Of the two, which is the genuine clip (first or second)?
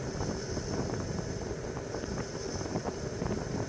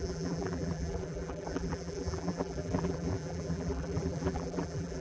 first